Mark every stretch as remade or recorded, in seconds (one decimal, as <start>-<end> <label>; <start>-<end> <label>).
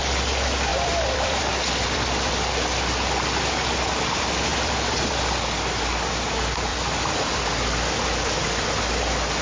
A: 0.0-0.7 recorded; 0.7-2.3 remade; 2.3-4.5 recorded; 4.5-5.1 remade; 5.1-6.7 recorded; 6.7-9.0 remade; 9.0-9.4 recorded